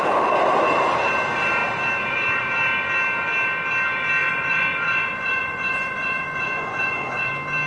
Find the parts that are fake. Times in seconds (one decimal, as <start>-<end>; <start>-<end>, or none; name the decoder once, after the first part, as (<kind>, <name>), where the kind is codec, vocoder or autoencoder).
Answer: 4.2-7.3 (vocoder, Vocos)